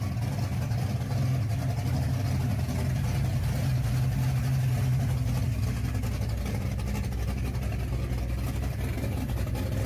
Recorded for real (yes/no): yes